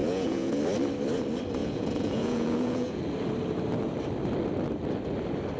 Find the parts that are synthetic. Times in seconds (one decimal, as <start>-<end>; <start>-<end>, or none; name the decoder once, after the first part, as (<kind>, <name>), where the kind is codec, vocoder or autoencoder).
0.0-0.6 (vocoder, Vocos); 1.6-3.0